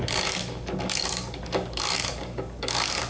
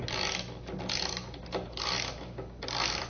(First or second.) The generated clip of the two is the first